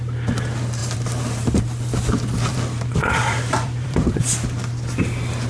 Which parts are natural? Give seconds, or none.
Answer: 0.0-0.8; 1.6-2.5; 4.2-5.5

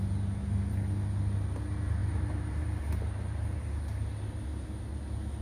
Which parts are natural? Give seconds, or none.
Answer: 0.0-2.0; 3.8-5.4

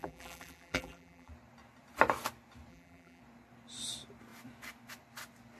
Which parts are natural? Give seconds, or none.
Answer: 1.3-2.7; 3.2-5.6

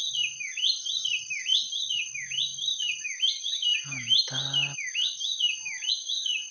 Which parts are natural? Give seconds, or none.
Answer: 2.7-3.3; 3.7-5.9

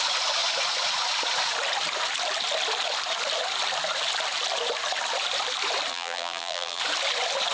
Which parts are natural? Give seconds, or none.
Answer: 0.0-5.9; 6.8-7.5